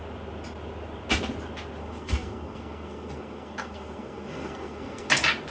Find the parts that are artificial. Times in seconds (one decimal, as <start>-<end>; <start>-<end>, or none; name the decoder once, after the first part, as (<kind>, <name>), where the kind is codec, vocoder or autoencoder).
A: 1.8-5.1 (codec, SNAC)